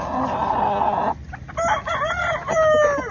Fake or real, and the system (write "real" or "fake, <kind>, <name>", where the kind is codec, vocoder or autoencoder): real